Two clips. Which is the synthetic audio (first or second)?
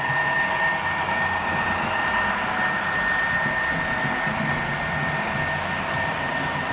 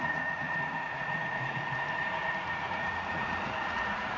second